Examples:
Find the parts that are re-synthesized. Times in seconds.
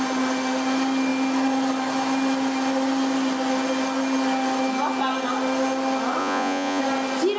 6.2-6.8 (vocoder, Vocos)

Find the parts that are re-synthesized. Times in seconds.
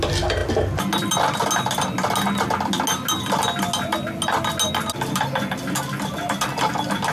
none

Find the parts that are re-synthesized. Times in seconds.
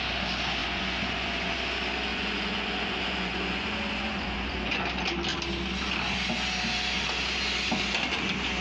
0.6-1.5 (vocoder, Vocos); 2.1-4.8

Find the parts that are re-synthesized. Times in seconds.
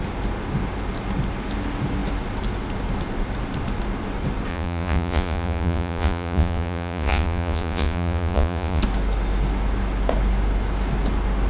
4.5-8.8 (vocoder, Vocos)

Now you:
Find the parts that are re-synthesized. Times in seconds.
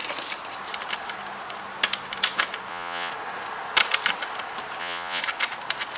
2.7-3.1 (vocoder, Vocos); 4.8-5.2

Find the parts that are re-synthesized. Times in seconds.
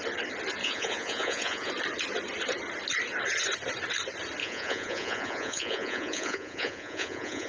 0.6-1.7 (vocoder, Vocos); 4.4-7.5